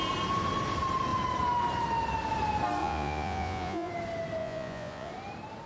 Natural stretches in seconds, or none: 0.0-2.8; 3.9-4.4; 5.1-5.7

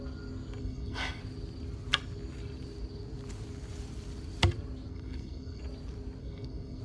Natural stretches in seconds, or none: 0.0-0.6; 1.2-4.9; 5.6-6.2

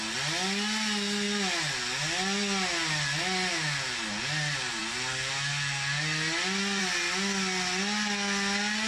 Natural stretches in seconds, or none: 0.0-8.9

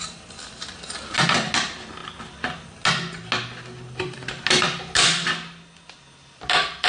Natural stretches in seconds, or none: 0.0-6.9

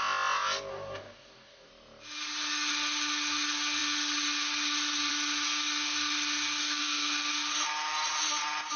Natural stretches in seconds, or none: 0.0-0.7; 1.7-6.6; 7.3-8.8